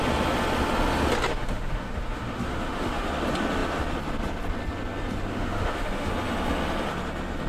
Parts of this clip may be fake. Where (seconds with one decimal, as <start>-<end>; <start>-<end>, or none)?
1.3-3.1; 5.3-6.1